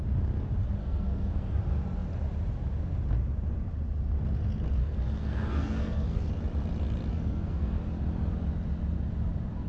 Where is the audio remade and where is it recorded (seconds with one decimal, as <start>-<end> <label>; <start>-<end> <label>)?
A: 0.0-0.8 recorded; 0.8-1.6 remade; 1.6-4.8 recorded; 4.8-6.3 remade; 6.3-7.1 recorded; 7.1-7.8 remade; 7.8-9.7 recorded